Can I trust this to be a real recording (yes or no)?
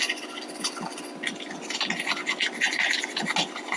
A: yes